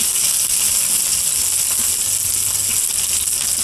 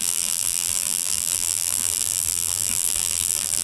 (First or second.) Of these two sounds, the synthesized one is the second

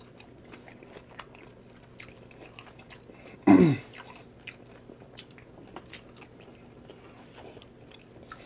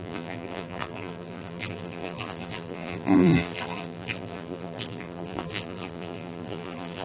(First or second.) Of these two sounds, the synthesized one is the second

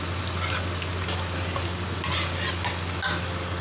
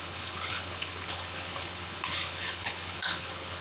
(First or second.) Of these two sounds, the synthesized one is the second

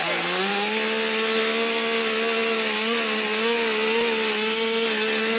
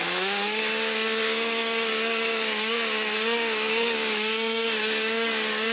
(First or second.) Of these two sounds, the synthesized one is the second